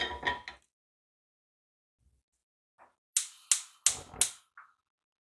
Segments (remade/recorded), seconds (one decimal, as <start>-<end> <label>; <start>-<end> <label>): 0.0-5.2 recorded